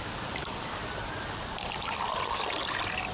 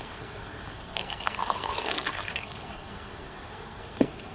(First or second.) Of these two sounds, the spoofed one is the second